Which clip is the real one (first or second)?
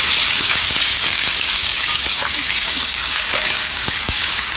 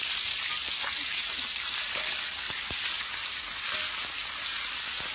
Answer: second